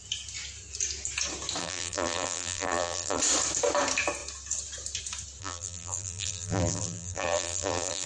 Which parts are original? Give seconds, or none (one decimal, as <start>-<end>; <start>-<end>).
0.0-1.6; 3.2-5.4